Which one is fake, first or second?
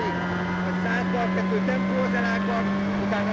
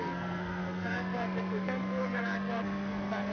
second